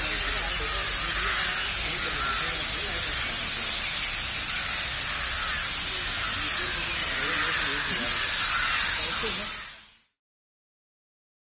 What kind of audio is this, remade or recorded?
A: recorded